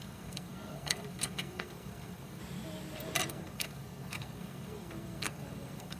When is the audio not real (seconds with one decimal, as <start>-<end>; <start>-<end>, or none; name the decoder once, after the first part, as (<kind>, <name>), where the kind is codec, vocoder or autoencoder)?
0.0-2.4 (codec, SNAC); 3.3-6.0